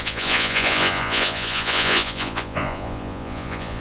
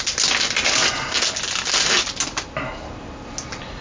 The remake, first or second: first